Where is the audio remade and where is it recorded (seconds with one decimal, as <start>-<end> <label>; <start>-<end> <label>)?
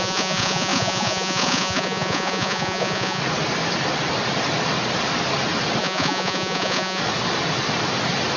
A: 0.0-3.2 remade; 3.2-5.8 recorded; 5.8-7.0 remade; 7.0-8.4 recorded